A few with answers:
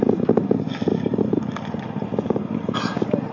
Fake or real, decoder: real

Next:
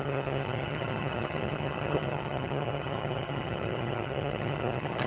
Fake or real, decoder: fake, vocoder, HiFi-GAN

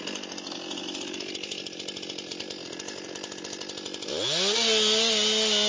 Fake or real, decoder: real